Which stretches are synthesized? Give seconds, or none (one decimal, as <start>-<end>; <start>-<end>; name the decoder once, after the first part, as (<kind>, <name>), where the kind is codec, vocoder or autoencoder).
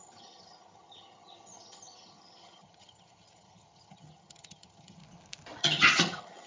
0.0-5.0 (vocoder, HiFi-GAN); 5.6-6.5